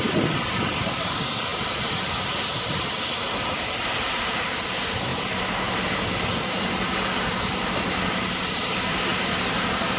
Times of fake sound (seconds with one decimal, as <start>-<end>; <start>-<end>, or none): none